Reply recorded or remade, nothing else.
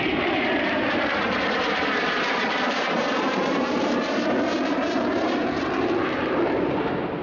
remade